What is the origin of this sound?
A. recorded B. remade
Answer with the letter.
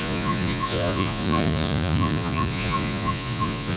B